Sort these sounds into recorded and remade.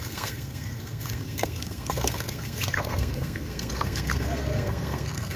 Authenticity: remade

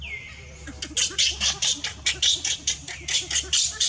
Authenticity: recorded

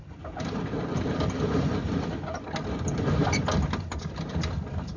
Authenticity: recorded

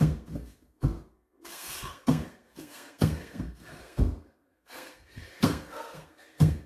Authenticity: remade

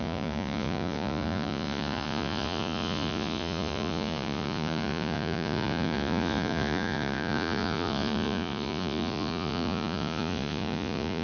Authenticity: remade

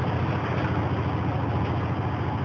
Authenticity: recorded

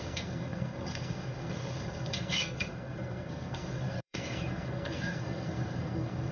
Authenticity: remade